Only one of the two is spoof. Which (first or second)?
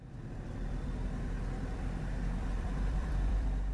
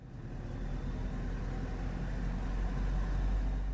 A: first